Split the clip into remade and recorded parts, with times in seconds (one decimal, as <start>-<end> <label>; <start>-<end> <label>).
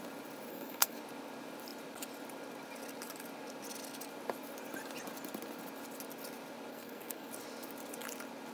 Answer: 0.0-0.5 recorded; 0.5-1.0 remade; 1.0-6.7 recorded; 6.7-7.3 remade; 7.3-8.5 recorded